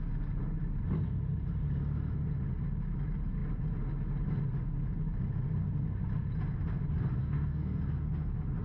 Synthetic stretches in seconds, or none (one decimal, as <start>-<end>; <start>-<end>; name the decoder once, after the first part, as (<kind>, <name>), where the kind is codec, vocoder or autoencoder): 7.2-7.8 (codec, DAC)